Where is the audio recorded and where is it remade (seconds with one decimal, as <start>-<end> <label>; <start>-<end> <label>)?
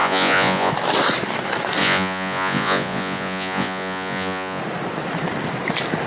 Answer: 0.0-0.7 remade; 0.7-1.8 recorded; 1.8-4.6 remade; 4.6-6.1 recorded